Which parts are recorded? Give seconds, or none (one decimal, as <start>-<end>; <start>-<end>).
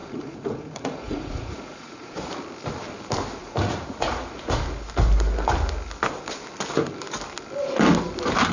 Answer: 2.3-3.4; 4.6-8.5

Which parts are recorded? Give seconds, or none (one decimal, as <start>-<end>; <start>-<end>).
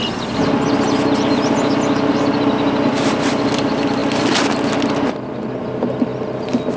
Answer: 0.0-6.8